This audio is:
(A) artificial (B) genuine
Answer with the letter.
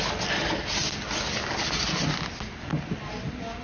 B